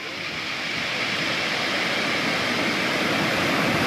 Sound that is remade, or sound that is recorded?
recorded